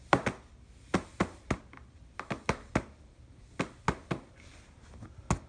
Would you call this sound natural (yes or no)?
yes